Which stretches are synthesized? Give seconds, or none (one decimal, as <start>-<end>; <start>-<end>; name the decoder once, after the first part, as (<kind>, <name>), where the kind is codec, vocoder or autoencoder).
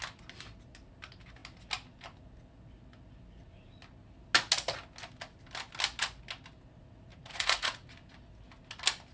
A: 7.1-7.9 (vocoder, Vocos)